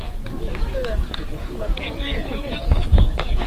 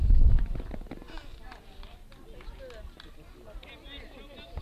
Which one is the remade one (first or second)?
first